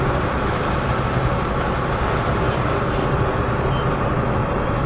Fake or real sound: real